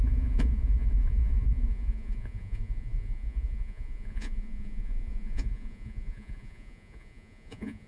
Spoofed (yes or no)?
yes